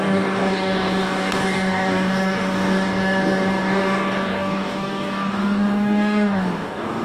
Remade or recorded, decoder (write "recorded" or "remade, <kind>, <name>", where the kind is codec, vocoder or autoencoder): remade, codec, DAC